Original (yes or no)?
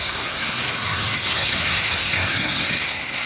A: no